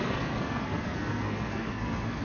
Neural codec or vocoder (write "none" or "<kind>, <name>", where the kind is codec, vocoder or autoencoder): codec, SNAC